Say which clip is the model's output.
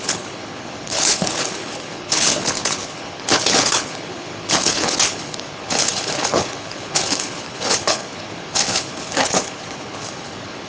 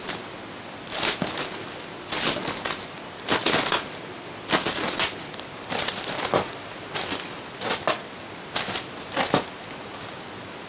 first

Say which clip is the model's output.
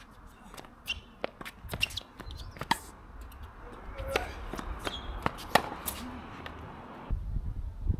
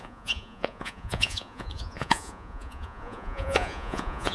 second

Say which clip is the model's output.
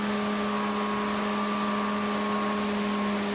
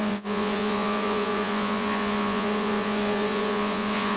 second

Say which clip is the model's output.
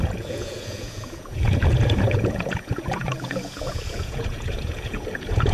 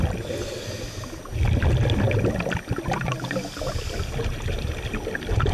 first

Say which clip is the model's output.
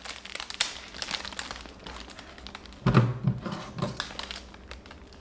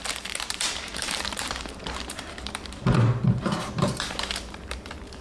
second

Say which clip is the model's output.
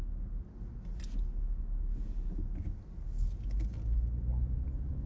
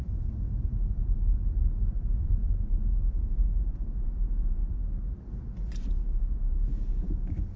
second